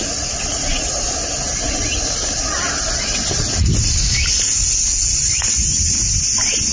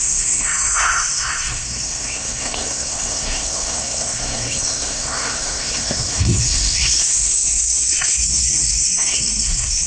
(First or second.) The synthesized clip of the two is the second